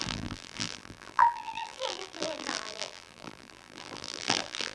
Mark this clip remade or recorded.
remade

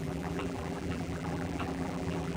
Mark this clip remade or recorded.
remade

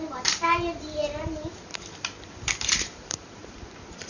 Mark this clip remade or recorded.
remade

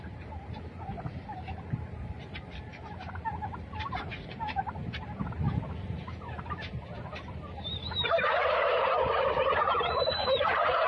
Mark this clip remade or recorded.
remade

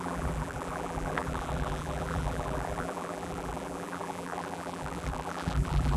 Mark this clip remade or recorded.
remade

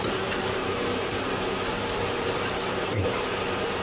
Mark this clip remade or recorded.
remade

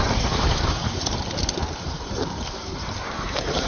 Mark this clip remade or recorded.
remade